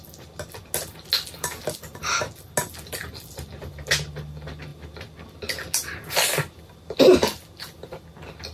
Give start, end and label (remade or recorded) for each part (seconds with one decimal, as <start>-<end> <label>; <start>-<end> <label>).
0.0-8.5 recorded